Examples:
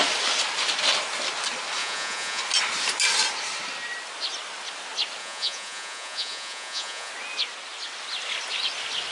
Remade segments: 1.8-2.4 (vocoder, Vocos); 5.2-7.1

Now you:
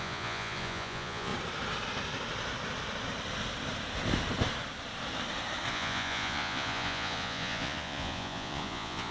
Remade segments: 0.0-1.3 (vocoder, Vocos); 5.7-9.1

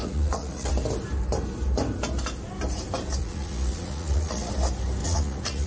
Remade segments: 0.0-0.7 (vocoder, Vocos); 3.2-4.5; 5.0-5.7

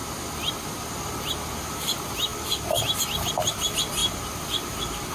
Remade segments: 1.7-4.0 (vocoder, BigVGAN v2)

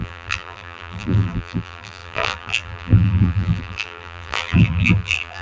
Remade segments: 0.0-5.4 (vocoder, BigVGAN v2)